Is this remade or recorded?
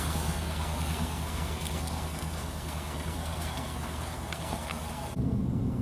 remade